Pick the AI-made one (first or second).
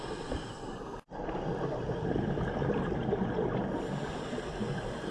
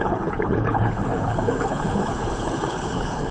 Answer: second